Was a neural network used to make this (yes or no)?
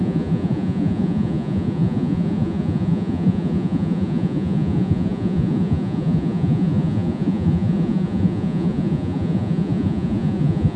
yes